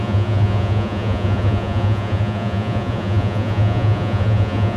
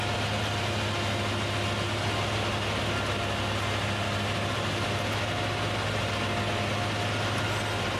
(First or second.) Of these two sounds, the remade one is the first